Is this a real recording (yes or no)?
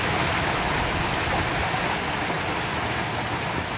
yes